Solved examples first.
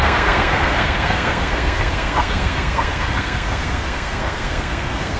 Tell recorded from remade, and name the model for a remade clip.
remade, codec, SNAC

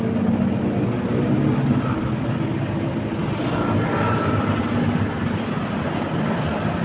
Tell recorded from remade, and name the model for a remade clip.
recorded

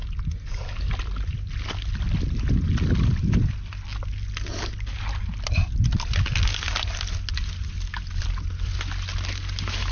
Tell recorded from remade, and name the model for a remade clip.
recorded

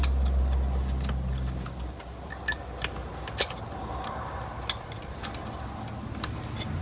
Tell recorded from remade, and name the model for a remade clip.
recorded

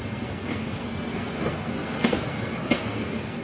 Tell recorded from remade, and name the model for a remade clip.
remade, codec, SNAC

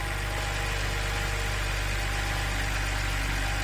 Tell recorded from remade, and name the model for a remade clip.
recorded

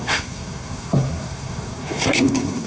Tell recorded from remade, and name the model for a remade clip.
remade, codec, SNAC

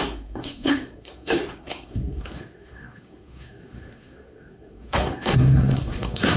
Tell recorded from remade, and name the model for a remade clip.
remade, codec, SNAC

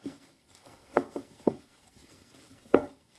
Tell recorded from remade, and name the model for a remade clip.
remade, codec, SNAC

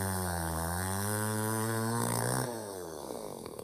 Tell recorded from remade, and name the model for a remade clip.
remade, codec, SNAC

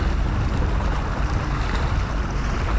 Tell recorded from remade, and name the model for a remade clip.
recorded